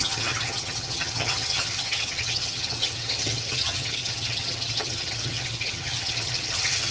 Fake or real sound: fake